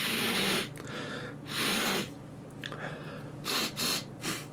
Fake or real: real